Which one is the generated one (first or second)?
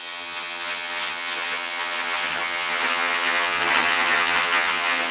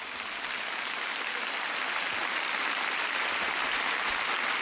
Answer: first